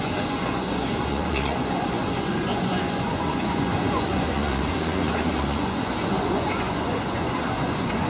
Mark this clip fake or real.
fake